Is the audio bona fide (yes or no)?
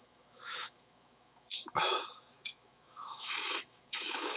no